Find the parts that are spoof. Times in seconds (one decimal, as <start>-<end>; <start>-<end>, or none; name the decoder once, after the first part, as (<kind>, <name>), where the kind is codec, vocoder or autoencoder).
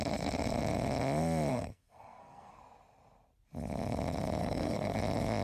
1.5-2.6 (codec, SNAC); 4.4-5.0